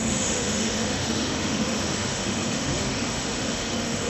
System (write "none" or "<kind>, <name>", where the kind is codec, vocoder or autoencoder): autoencoder, DAC-VAE